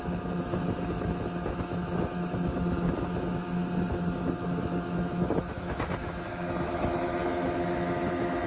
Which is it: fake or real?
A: fake